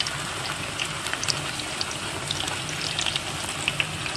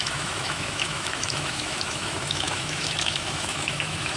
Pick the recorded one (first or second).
first